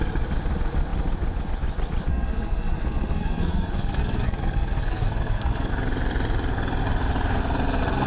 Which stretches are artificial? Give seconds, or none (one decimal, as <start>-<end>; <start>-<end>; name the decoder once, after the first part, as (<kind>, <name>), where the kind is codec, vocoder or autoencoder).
2.1-5.7 (codec, SNAC)